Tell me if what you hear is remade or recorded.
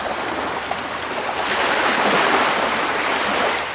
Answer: recorded